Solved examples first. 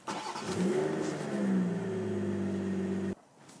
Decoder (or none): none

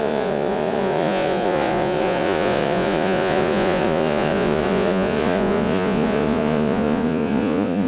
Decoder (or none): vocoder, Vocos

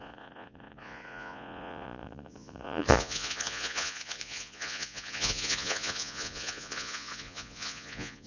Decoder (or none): vocoder, Vocos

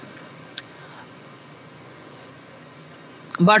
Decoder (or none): vocoder, Vocos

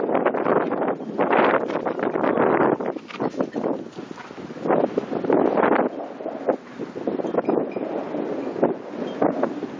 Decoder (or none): none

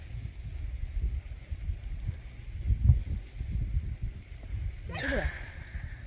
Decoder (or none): none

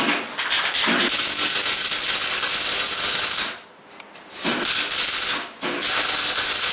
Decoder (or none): none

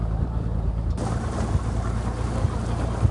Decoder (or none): vocoder, BigVGAN v2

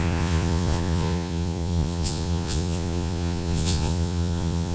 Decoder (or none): vocoder, Vocos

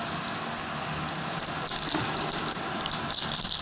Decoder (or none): none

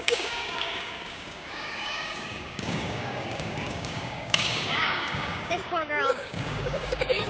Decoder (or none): codec, DAC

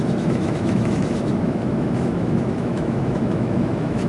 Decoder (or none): autoencoder, DAC-VAE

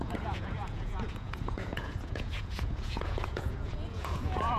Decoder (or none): vocoder, Vocos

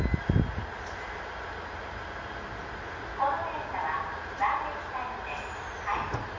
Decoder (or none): none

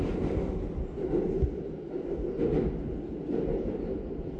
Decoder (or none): none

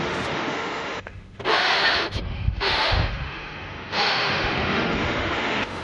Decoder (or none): autoencoder, DAC-VAE